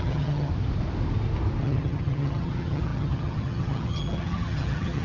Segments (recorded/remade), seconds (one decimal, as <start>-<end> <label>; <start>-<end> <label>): 0.0-0.5 remade; 0.5-1.6 recorded; 1.6-5.0 remade